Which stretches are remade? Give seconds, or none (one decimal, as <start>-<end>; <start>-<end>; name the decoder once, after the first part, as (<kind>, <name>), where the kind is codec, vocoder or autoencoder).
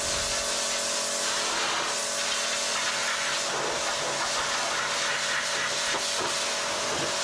none